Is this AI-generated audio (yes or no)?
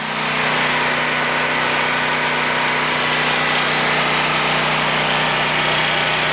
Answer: no